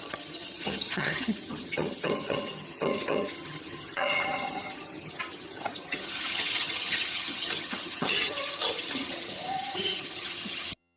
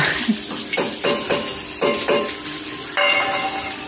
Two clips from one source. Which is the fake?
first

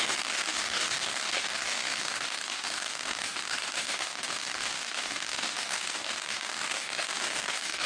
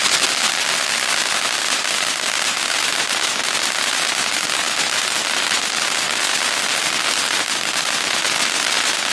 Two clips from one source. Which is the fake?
first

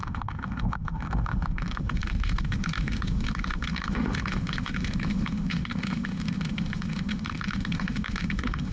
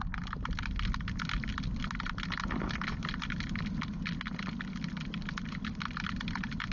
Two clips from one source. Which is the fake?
first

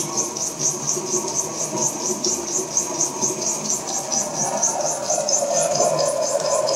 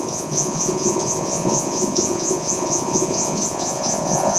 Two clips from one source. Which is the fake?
second